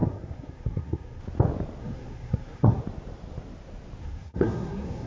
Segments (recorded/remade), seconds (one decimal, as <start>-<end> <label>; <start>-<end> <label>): 0.0-1.2 remade; 1.2-1.8 recorded; 1.8-2.8 remade; 2.8-4.0 recorded; 4.0-5.1 remade